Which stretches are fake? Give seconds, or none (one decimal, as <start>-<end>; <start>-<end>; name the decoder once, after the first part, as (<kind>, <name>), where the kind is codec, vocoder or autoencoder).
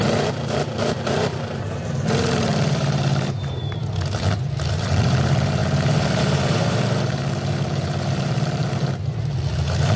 0.0-3.8 (vocoder, BigVGAN v2); 4.7-10.0